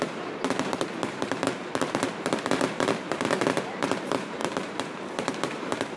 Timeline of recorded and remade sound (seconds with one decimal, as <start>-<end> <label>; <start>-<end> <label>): 0.0-6.0 remade